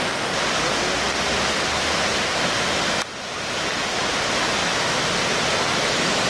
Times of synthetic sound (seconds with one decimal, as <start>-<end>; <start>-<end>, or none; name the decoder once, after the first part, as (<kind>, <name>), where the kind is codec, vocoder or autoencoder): 4.6-5.1 (autoencoder, DAC-VAE)